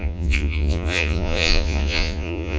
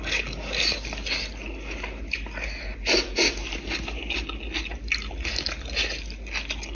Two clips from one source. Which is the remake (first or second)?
first